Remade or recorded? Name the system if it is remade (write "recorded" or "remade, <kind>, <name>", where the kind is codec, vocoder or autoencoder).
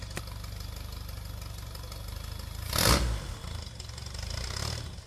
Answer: recorded